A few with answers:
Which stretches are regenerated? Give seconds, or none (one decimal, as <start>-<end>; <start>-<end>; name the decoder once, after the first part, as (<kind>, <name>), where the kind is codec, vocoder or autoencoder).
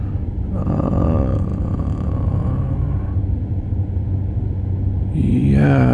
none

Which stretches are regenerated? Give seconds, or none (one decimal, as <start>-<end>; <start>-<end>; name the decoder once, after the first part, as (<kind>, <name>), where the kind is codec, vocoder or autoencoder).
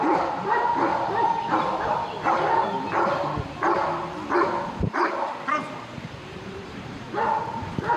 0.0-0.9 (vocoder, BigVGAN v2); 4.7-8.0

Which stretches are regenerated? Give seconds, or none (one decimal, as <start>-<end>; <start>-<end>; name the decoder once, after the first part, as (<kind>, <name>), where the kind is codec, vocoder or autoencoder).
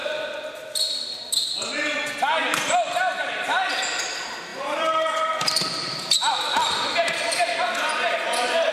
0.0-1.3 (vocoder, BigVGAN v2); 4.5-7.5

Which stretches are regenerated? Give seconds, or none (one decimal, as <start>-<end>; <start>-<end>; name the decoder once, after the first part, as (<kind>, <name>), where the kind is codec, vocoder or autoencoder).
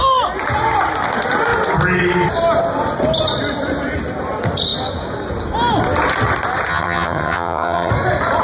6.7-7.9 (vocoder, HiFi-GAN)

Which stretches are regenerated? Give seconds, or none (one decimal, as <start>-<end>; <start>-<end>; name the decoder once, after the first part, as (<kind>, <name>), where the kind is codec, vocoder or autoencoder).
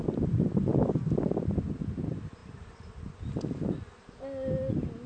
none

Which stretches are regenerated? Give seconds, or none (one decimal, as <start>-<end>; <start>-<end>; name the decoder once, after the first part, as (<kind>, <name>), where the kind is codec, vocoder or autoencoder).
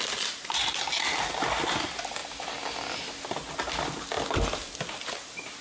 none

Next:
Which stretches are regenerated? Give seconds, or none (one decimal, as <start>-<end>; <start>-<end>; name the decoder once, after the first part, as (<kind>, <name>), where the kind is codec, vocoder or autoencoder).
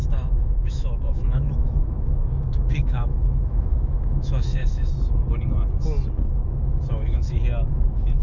0.0-4.9 (autoencoder, DAC-VAE); 6.9-7.4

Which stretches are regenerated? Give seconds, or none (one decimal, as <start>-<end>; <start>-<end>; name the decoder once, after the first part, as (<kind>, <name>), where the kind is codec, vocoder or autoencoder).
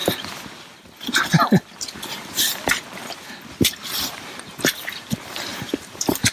3.6-6.3 (vocoder, BigVGAN v2)